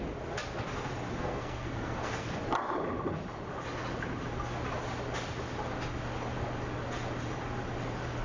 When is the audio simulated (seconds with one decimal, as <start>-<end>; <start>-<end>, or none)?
1.2-2.4

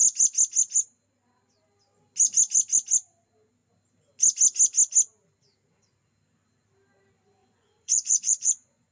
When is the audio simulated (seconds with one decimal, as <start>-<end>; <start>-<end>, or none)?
7.4-8.9

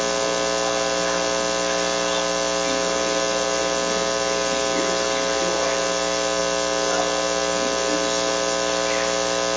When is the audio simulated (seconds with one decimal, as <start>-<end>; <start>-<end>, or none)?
none

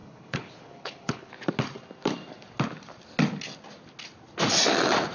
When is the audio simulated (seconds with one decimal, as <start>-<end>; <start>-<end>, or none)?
0.0-1.3

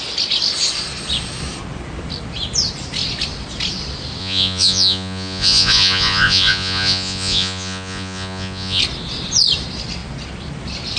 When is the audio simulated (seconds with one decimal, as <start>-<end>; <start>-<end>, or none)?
4.2-8.8

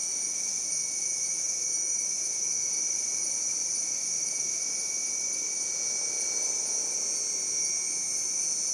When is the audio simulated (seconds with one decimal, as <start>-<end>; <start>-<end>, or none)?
0.0-2.7; 3.8-4.6

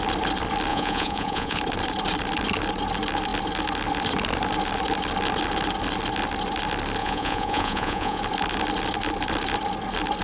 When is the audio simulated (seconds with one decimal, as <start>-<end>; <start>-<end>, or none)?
0.7-1.6; 7.0-8.2

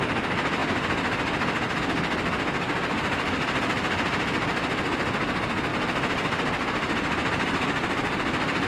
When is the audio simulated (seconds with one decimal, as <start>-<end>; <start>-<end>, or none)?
none